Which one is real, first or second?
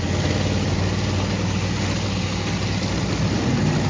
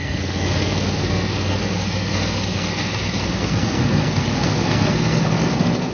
first